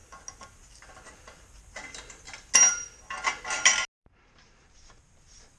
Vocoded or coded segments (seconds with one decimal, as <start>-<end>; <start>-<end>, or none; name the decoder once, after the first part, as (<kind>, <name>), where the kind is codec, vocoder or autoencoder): none